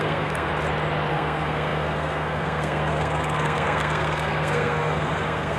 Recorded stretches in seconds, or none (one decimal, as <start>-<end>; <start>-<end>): 0.5-1.1